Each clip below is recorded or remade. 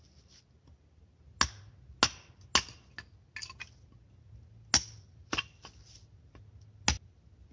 recorded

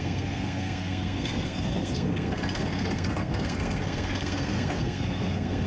remade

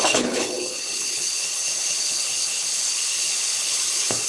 remade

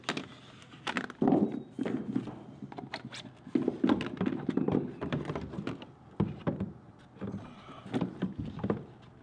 recorded